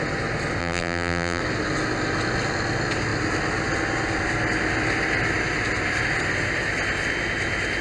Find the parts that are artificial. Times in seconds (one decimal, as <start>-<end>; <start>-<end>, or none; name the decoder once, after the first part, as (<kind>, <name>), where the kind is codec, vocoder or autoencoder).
0.6-1.4 (vocoder, BigVGAN v2)